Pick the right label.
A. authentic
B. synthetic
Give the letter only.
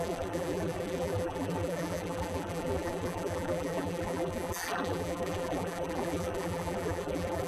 B